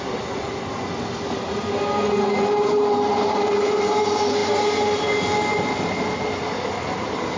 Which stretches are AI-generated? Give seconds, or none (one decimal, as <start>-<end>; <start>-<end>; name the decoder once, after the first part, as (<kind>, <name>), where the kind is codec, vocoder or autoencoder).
none